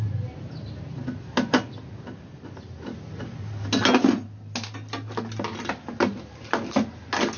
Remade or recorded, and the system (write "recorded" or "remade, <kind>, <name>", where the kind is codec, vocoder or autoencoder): recorded